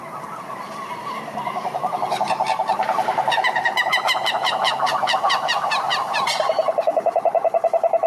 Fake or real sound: fake